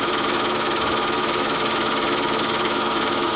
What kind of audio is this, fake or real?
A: fake